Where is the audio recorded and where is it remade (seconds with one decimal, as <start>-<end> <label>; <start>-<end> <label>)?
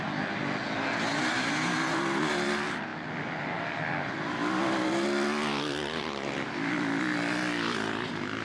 0.0-8.4 recorded